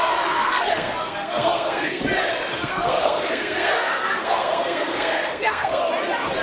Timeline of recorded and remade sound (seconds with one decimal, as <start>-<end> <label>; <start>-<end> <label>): 0.0-0.4 recorded; 0.4-2.0 remade; 2.0-2.5 recorded; 2.5-5.8 remade; 5.8-6.4 recorded